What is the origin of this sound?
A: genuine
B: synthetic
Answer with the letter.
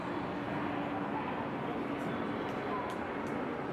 A